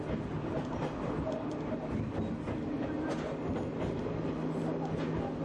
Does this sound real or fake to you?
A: real